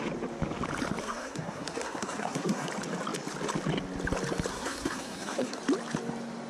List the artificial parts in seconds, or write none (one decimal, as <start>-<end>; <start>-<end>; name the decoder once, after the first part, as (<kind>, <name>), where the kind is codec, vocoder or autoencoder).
1.0-2.7 (codec, SNAC); 4.5-5.6